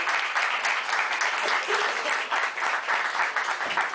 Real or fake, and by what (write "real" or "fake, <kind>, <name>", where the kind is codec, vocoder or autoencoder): real